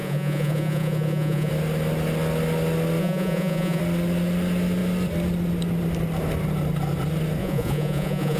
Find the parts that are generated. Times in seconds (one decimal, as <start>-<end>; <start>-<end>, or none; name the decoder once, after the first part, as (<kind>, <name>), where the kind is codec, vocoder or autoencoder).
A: 0.0-1.5 (vocoder, Vocos); 3.0-3.8; 7.4-8.4